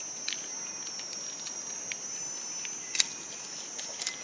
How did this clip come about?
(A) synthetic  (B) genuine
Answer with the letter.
B